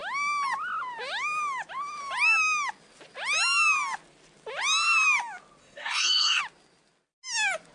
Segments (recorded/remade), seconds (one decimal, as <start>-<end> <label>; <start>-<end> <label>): 0.0-5.6 recorded; 5.6-6.4 remade; 6.4-7.7 recorded